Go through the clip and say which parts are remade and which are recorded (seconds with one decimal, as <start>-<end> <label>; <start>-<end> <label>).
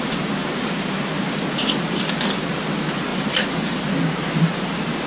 0.0-5.1 recorded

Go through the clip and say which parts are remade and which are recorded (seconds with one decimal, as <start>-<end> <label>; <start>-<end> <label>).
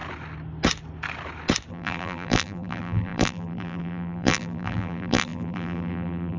0.0-1.7 recorded; 1.7-6.4 remade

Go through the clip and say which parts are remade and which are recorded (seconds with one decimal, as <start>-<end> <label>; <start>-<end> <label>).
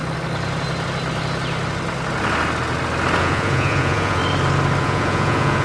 0.0-3.2 recorded; 3.2-4.2 remade; 4.2-4.8 recorded; 4.8-5.6 remade